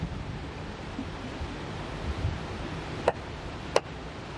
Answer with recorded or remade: recorded